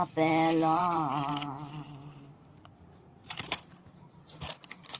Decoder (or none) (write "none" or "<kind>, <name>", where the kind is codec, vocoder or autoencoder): vocoder, BigVGAN v2